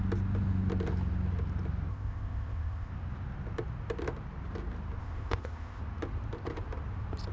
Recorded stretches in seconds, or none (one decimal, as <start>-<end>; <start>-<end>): 0.0-1.9; 2.9-5.0; 5.8-7.3